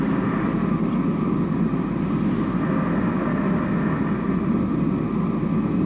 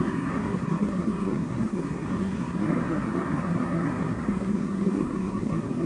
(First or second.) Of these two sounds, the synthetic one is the second